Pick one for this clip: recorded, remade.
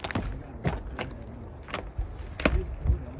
recorded